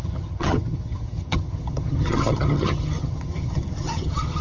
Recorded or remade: remade